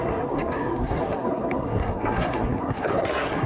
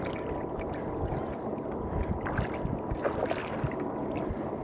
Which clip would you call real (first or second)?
second